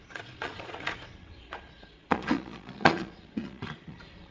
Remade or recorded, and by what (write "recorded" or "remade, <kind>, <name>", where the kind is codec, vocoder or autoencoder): remade, vocoder, Vocos